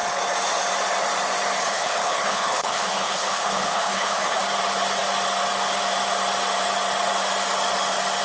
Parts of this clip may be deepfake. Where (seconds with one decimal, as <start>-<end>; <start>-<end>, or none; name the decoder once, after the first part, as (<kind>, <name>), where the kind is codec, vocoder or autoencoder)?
1.6-4.4 (codec, HILCodec)